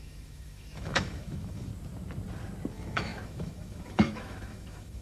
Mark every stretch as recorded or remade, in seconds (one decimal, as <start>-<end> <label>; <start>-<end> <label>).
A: 0.0-1.7 remade; 1.7-2.7 recorded; 2.7-5.0 remade